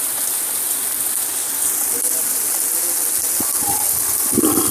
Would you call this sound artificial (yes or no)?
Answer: no